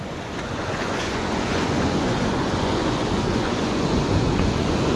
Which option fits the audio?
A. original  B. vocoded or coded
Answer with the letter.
B